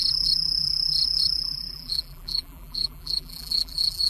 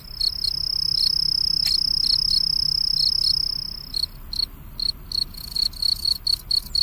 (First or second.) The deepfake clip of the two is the first